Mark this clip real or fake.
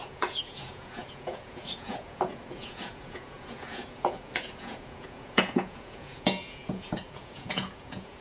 fake